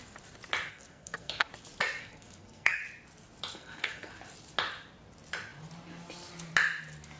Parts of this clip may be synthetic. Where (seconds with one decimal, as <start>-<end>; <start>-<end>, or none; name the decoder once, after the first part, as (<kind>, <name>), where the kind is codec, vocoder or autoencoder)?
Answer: 0.7-1.5 (codec, SNAC); 2.0-2.8; 3.5-4.1